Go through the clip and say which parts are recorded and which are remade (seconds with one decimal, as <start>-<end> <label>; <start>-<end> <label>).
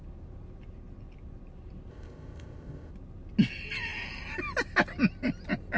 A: 0.0-1.9 recorded; 1.9-2.9 remade; 2.9-5.8 recorded